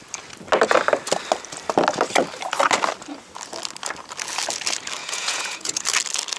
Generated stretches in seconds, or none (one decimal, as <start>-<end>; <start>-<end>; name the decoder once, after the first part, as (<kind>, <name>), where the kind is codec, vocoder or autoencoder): 5.0-5.8 (vocoder, Vocos)